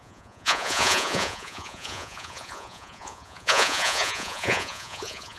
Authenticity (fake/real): fake